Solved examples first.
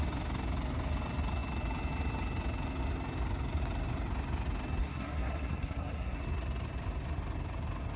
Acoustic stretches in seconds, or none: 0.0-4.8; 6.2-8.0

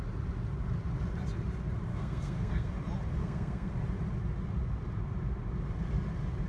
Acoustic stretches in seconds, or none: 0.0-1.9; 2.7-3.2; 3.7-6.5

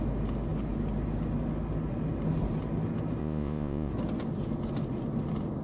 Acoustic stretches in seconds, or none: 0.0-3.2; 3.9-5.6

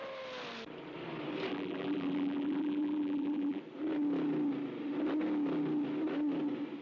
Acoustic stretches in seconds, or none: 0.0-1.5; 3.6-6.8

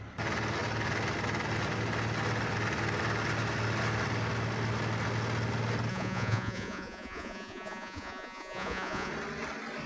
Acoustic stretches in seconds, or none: 0.0-5.9; 9.1-9.9

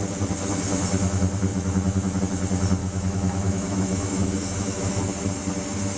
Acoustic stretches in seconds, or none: 0.0-1.5; 2.2-2.8; 5.0-6.0

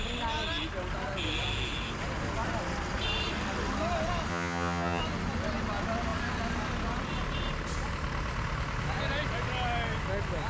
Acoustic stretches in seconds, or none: 0.0-4.3; 5.0-10.5

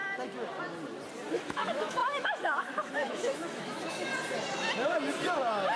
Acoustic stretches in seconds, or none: 0.0-1.3; 4.1-5.8